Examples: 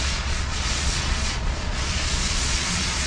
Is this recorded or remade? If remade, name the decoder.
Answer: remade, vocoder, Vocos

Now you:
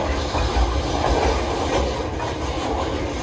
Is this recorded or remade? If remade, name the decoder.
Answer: recorded